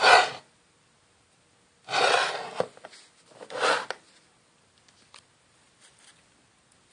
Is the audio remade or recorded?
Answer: recorded